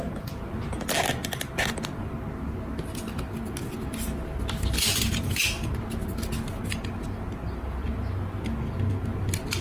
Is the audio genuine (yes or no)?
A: yes